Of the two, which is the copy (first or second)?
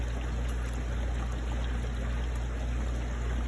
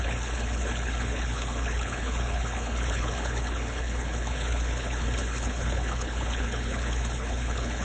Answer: second